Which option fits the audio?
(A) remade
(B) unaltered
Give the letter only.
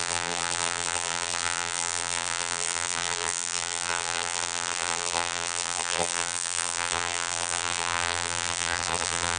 A